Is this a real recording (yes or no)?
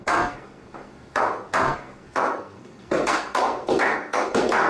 no